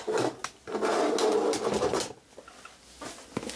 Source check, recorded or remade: recorded